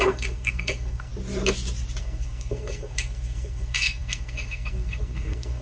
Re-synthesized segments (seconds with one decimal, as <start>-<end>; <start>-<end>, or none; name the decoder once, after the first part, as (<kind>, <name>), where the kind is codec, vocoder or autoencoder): 0.0-1.1 (codec, SNAC); 2.0-5.6